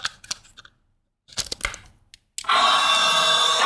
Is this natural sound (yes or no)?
yes